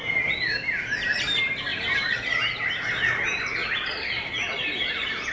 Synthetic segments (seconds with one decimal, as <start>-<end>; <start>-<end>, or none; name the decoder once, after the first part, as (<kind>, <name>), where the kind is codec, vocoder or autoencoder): 1.7-2.2 (vocoder, BigVGAN v2); 3.6-4.1